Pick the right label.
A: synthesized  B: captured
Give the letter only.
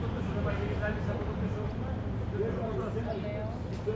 B